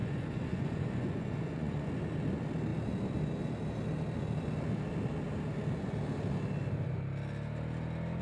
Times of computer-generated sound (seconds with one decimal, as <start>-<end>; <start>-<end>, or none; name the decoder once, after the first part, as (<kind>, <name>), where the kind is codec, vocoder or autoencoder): 0.0-1.9 (vocoder, Vocos)